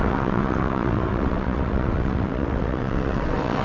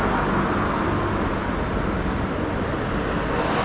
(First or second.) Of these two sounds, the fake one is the first